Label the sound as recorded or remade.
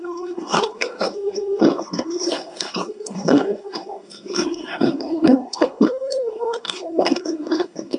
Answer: remade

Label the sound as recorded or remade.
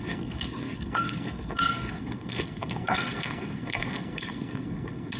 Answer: remade